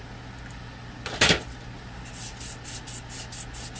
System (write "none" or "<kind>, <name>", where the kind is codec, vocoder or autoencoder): none